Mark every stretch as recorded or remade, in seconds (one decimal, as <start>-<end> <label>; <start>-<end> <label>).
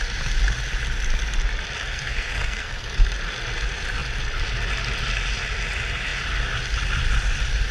0.0-1.8 recorded; 1.8-3.1 remade; 3.1-7.7 recorded